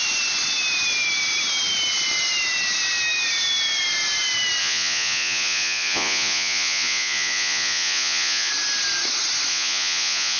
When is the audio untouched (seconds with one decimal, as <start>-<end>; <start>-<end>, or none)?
0.0-4.6; 8.5-9.5